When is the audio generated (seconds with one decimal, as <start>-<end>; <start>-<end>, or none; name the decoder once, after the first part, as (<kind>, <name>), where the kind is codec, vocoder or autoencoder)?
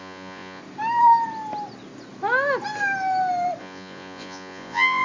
0.0-0.6 (vocoder, Vocos); 3.6-5.0